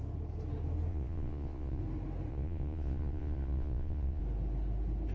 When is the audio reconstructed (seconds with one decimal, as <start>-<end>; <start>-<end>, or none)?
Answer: 0.9-1.8; 2.3-4.2